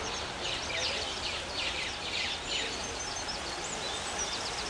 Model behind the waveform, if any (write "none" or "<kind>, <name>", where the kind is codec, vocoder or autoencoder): none